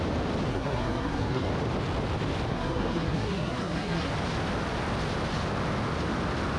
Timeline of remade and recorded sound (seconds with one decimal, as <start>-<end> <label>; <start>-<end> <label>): 0.0-0.5 recorded; 0.5-1.5 remade; 1.5-2.5 recorded; 2.5-4.1 remade; 4.1-6.6 recorded